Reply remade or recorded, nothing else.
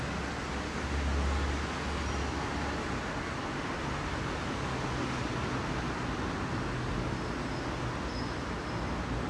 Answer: recorded